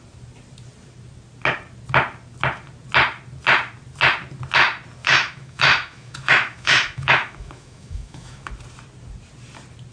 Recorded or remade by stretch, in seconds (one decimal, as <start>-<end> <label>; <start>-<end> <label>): 0.0-5.0 recorded; 5.0-8.5 remade; 8.5-9.9 recorded